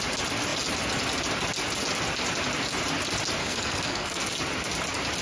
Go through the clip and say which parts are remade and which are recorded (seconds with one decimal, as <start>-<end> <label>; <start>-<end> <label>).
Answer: 0.0-3.4 recorded; 3.4-4.2 remade; 4.2-5.2 recorded